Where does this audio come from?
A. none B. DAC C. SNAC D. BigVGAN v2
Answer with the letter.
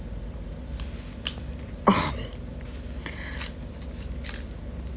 A